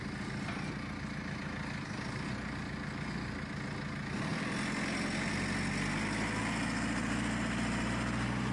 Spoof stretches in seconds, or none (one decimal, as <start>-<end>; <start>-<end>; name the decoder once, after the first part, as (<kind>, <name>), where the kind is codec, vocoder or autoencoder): none